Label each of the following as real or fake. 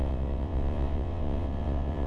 fake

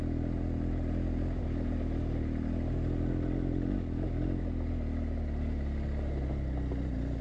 real